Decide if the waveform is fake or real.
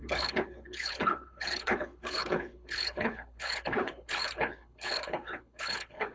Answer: fake